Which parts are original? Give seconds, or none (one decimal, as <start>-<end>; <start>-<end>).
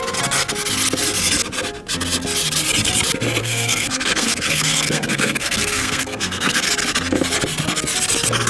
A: 0.0-3.4; 6.7-8.5